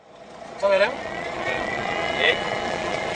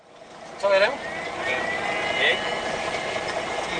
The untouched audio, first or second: second